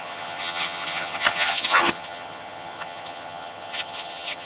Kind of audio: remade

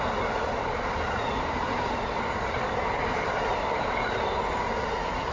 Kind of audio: recorded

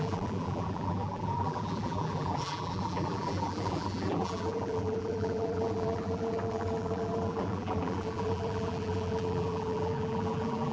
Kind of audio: remade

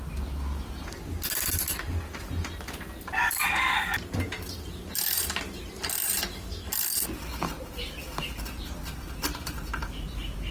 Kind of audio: recorded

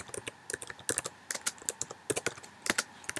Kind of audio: recorded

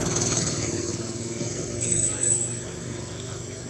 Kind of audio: remade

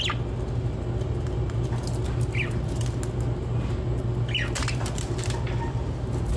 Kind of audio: recorded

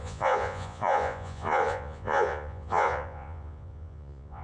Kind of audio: remade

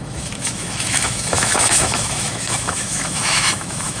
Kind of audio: remade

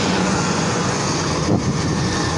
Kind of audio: remade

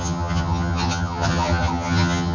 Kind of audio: remade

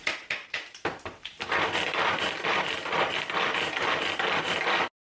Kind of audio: recorded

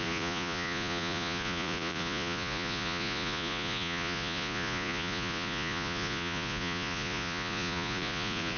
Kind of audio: remade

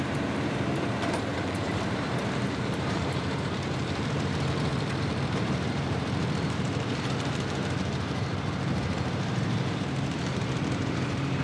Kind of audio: remade